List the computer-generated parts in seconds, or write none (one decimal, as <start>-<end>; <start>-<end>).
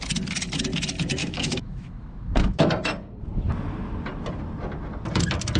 1.2-2.7